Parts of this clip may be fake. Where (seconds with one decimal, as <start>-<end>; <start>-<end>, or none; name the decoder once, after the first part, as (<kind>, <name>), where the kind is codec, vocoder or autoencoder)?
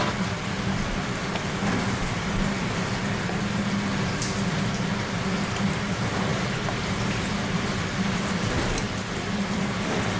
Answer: 0.0-1.2 (vocoder, BigVGAN v2); 5.4-10.2